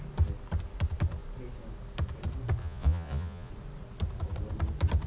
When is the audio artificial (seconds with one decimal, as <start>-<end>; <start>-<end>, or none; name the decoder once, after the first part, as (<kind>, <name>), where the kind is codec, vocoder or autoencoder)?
2.6-3.5 (vocoder, Vocos)